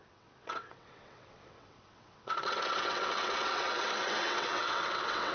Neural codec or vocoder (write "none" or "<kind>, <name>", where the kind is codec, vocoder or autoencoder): vocoder, WaveNeXt